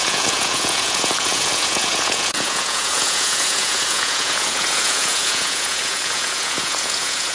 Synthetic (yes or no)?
yes